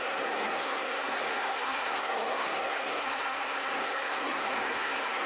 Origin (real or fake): fake